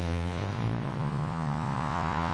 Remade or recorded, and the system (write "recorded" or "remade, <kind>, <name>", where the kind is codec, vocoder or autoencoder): remade, vocoder, Vocos